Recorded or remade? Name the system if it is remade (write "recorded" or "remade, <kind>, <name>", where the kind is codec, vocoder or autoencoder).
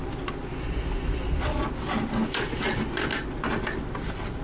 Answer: recorded